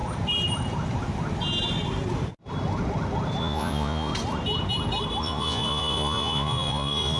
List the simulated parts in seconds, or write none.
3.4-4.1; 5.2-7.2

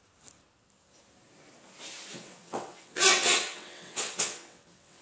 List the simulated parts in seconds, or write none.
2.1-5.0

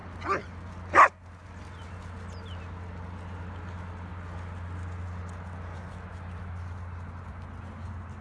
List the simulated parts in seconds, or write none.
none

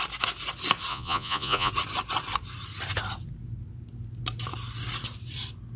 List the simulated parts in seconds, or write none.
0.9-1.7

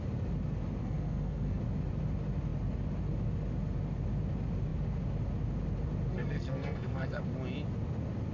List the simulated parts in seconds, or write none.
0.8-1.6; 6.1-7.2

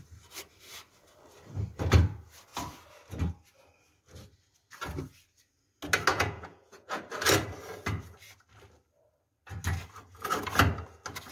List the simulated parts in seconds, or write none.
6.1-7.0

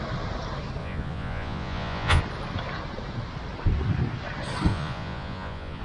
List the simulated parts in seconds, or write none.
0.8-2.2; 4.7-5.8